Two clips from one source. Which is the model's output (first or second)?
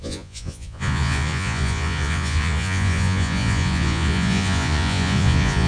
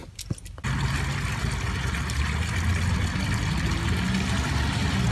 first